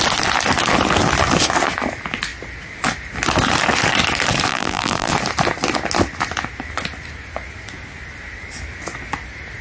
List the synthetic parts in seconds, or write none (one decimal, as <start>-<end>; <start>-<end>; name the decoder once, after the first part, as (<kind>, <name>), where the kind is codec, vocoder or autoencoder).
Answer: 4.5-5.1 (vocoder, BigVGAN v2)